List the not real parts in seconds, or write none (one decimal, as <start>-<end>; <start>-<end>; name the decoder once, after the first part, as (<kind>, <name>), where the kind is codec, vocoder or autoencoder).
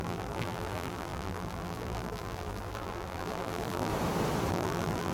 0.0-3.9 (vocoder, BigVGAN v2); 4.5-5.1